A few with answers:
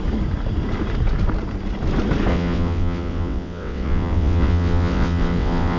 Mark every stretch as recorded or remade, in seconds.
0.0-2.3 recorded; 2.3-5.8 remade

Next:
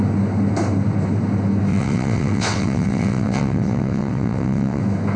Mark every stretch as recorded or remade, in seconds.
0.0-1.7 recorded; 1.7-4.8 remade; 4.8-5.2 recorded

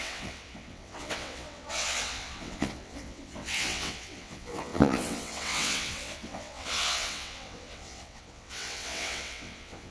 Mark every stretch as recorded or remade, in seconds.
0.0-9.9 remade

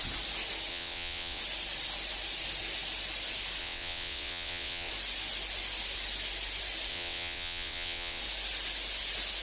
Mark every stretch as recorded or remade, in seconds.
0.0-0.7 recorded; 0.7-1.4 remade; 1.4-3.6 recorded; 3.6-4.9 remade; 4.9-6.9 recorded; 6.9-8.2 remade; 8.2-9.4 recorded

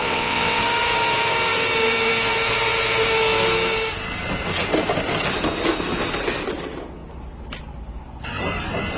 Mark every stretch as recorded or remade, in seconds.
0.0-0.6 remade; 0.6-9.0 recorded